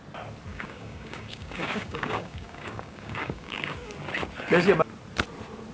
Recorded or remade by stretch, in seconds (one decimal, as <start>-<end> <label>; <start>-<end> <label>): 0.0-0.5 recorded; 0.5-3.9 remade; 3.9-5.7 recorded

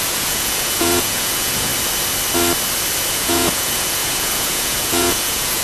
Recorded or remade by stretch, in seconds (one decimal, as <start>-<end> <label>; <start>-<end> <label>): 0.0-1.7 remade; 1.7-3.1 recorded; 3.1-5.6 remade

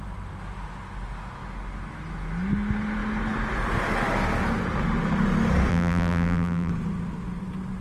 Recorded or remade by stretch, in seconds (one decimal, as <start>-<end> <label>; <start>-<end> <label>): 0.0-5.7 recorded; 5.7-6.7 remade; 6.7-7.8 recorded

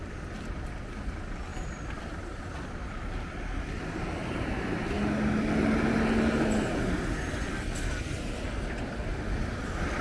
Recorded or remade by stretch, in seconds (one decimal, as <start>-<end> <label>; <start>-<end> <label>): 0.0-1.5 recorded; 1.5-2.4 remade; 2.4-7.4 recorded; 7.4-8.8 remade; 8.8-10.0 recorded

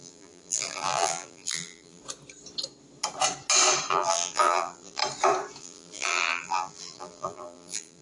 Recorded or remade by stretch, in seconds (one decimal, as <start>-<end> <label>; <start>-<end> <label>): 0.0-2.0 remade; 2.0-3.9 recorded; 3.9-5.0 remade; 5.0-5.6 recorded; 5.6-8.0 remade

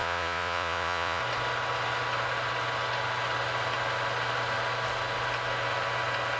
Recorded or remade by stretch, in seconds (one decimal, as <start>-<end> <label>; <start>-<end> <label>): 0.0-1.2 remade; 1.2-6.4 recorded